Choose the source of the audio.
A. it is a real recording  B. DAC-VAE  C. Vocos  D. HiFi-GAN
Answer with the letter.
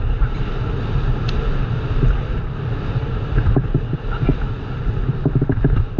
A